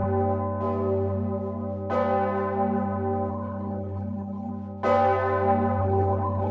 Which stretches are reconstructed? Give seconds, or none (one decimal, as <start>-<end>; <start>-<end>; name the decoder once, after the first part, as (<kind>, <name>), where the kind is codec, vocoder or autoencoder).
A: 3.3-4.5 (codec, HILCodec); 5.8-6.5